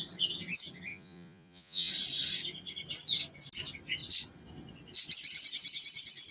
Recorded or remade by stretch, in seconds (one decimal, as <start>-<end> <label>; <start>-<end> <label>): 0.0-0.9 recorded; 0.9-1.9 remade; 1.9-6.3 recorded